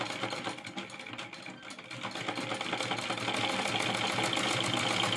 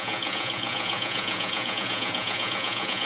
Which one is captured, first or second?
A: first